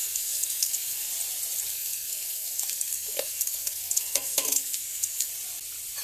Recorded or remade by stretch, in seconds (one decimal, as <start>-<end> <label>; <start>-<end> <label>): 0.0-1.1 remade; 1.1-1.7 recorded; 1.7-5.3 remade; 5.3-6.0 recorded